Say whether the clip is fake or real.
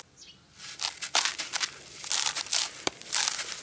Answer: real